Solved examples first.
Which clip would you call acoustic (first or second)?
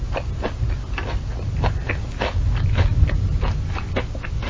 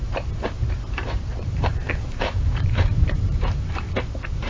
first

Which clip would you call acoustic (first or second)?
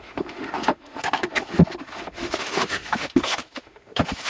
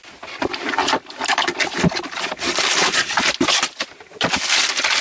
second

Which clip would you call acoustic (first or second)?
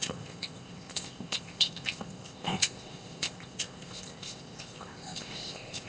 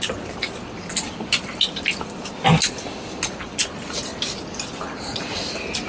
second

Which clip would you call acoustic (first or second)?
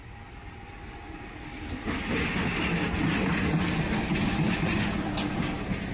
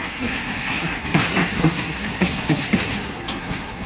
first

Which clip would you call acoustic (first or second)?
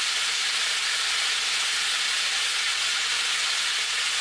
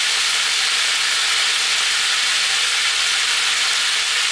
second